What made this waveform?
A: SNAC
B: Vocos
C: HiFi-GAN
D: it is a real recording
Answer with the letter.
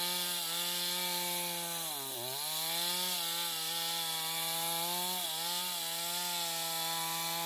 D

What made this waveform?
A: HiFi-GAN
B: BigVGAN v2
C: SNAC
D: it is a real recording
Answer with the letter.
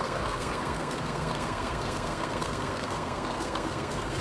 C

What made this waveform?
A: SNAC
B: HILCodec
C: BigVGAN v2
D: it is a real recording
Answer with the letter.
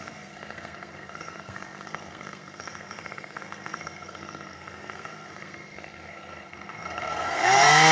A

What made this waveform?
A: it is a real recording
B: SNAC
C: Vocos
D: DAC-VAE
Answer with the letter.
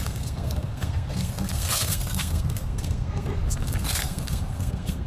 B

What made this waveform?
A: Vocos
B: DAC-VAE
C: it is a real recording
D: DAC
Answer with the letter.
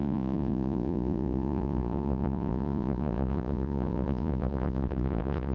A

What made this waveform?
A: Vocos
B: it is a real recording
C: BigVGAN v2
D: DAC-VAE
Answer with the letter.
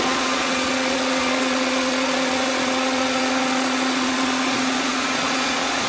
A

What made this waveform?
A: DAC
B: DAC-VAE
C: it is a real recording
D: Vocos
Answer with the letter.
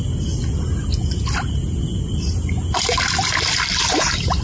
C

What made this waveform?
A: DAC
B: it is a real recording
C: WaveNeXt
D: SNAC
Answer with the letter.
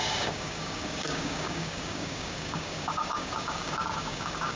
A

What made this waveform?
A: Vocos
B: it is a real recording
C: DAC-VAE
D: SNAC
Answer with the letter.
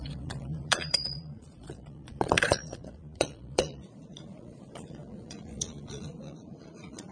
A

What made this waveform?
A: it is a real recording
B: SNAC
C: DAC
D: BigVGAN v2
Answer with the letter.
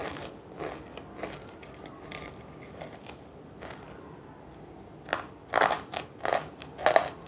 A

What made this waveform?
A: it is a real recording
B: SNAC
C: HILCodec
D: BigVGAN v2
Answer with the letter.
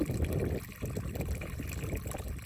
A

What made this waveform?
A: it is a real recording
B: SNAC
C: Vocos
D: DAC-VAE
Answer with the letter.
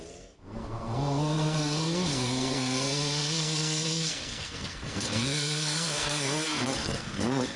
B